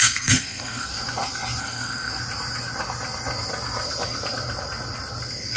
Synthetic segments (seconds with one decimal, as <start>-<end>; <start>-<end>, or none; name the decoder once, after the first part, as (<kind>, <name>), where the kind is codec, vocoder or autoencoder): 0.0-0.9 (codec, SNAC); 1.6-2.1